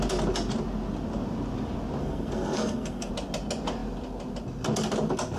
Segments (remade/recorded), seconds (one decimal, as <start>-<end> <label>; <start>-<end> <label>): 0.0-2.0 recorded; 2.0-3.1 remade; 3.1-5.4 recorded